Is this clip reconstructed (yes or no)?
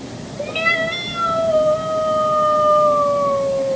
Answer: no